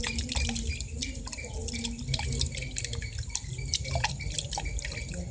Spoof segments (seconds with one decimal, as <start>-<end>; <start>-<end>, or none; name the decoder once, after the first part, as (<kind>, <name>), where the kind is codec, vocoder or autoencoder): none